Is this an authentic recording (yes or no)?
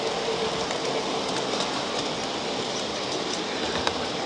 yes